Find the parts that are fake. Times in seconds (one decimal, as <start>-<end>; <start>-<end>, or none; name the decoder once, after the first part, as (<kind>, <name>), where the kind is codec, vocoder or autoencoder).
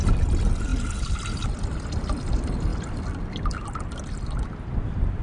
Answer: none